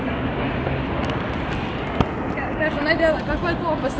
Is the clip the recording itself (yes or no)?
yes